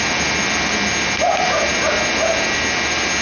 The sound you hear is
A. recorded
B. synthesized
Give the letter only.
A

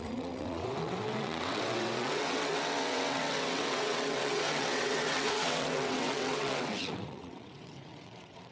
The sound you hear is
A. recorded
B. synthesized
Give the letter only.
B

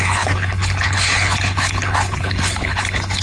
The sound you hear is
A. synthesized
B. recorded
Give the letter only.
A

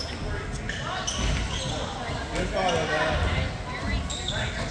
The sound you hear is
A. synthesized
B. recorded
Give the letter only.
B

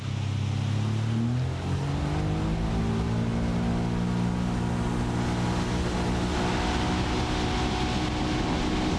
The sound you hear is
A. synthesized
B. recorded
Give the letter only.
B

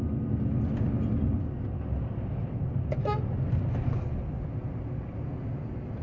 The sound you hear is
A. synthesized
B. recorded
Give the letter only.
B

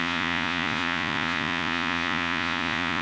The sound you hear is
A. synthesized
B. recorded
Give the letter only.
A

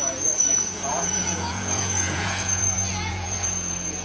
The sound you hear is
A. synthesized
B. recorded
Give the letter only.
A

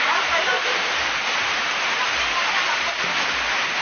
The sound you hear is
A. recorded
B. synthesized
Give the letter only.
A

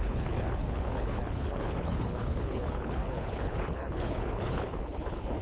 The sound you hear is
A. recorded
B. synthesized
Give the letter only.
B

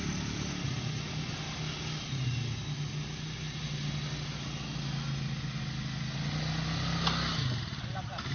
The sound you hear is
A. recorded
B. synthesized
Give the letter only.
A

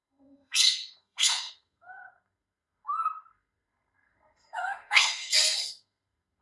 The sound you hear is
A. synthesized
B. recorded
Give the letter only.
A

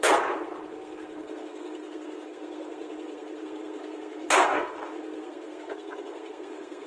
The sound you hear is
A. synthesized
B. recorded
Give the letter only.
A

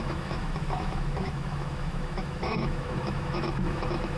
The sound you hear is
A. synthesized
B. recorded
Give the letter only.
A